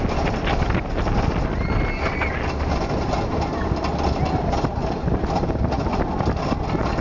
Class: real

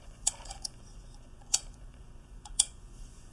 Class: fake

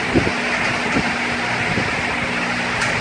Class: real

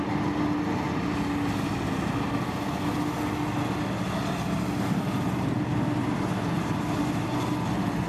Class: real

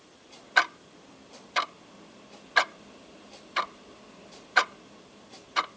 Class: real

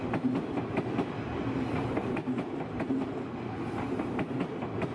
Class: real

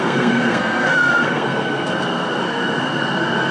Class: fake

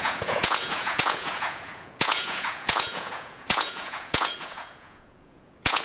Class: fake